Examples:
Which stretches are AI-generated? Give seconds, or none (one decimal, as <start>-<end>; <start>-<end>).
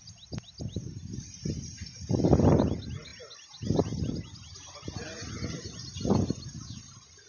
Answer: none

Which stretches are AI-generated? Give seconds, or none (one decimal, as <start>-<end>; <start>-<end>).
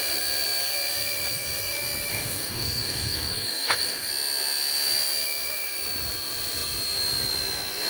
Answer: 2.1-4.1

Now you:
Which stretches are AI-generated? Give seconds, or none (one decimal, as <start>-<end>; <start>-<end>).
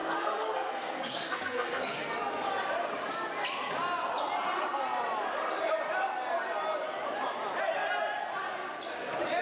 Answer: 0.0-2.1